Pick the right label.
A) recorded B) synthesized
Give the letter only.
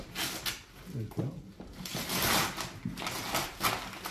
A